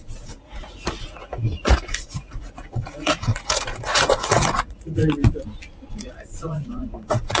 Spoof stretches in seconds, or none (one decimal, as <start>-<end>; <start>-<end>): 0.0-5.0; 5.9-7.4